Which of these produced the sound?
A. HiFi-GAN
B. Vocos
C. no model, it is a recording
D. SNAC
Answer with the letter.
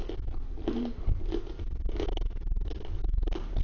C